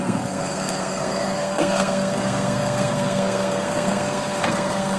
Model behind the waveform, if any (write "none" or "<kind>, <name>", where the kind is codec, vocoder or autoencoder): codec, SNAC